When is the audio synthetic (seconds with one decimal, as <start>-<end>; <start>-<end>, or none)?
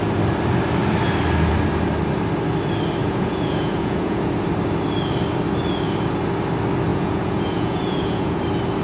3.0-4.2; 6.9-8.4